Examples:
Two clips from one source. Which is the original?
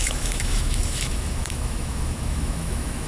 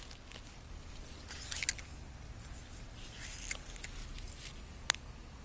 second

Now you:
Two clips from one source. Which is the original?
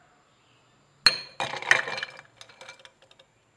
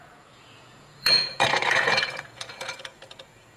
first